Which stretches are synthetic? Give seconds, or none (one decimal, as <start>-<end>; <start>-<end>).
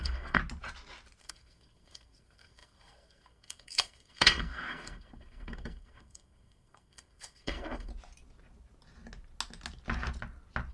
0.0-0.4; 1.2-7.9